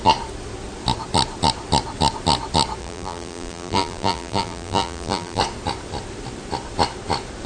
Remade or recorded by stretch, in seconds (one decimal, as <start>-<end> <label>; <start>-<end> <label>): 0.0-2.8 recorded; 2.8-5.4 remade; 5.4-7.5 recorded